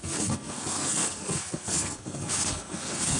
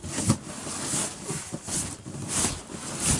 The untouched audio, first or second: second